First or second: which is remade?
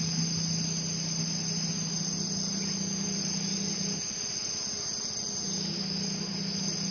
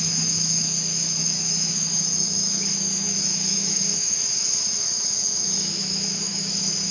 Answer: second